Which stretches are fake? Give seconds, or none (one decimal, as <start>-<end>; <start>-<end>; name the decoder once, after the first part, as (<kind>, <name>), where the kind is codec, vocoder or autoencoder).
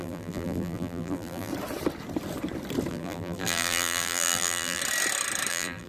0.0-1.5 (vocoder, BigVGAN v2); 2.9-4.8; 5.5-5.9